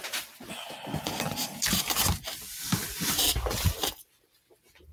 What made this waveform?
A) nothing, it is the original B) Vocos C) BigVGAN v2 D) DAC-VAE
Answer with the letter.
A